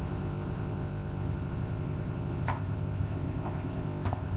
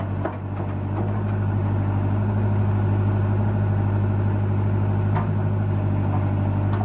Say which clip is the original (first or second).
second